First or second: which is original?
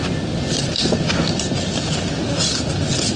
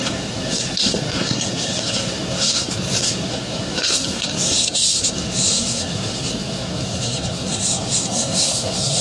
first